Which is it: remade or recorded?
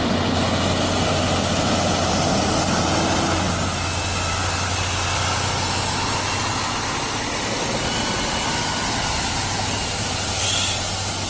recorded